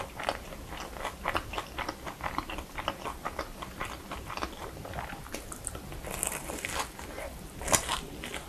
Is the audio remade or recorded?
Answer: recorded